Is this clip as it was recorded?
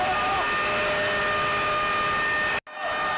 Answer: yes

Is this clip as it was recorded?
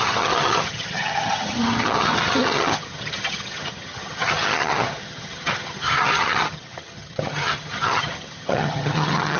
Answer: no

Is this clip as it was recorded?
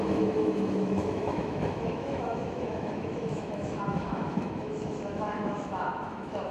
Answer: no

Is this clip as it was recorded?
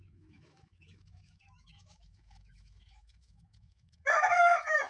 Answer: no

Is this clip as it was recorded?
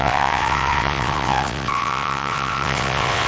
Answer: no